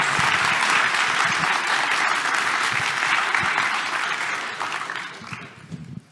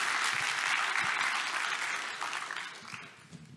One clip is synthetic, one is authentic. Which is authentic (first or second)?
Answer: second